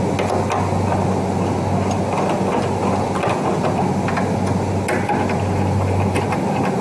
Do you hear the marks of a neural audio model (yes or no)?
no